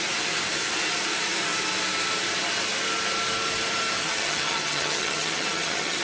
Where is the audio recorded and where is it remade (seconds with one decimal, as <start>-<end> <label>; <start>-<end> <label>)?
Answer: 0.0-4.0 recorded; 4.0-6.0 remade